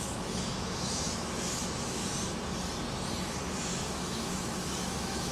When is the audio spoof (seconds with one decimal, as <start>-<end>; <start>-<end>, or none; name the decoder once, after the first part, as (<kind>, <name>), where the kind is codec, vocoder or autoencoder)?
0.0-2.0 (autoencoder, DAC-VAE); 3.5-5.3